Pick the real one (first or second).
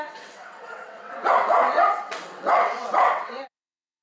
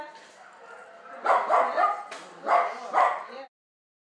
second